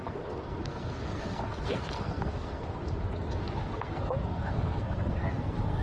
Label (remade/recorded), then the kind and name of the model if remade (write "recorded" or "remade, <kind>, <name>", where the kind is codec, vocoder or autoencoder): remade, codec, SNAC